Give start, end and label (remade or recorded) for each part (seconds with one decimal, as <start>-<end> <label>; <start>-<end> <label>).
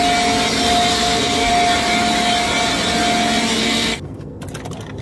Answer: 0.0-0.9 recorded; 0.9-1.5 remade; 1.5-3.6 recorded; 3.6-4.4 remade; 4.4-5.0 recorded